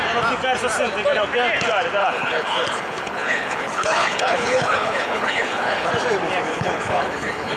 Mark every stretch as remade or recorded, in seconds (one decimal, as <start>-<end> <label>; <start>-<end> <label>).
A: 0.0-2.0 recorded; 2.0-5.9 remade; 5.9-6.5 recorded; 6.5-7.6 remade